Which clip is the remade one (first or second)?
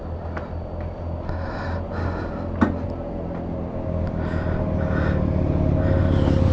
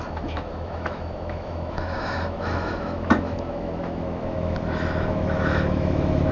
second